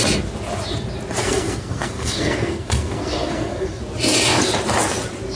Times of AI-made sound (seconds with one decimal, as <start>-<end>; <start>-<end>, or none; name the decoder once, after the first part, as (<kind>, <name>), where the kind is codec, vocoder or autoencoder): 1.2-3.8 (codec, SNAC)